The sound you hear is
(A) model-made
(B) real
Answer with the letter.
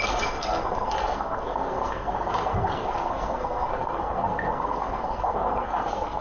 A